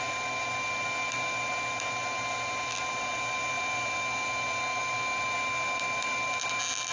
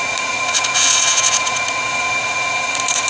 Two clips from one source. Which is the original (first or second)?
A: first